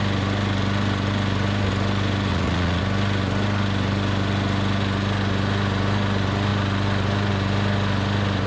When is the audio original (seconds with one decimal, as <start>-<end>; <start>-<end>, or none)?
0.0-2.3; 2.8-8.5